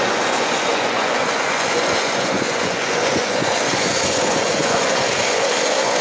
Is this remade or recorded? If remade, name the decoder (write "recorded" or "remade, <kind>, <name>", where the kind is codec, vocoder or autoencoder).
remade, vocoder, Vocos